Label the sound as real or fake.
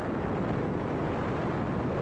real